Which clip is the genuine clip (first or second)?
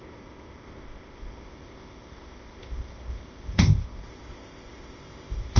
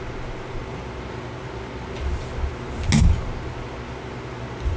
second